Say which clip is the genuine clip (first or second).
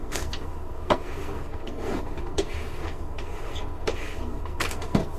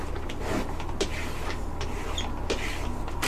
second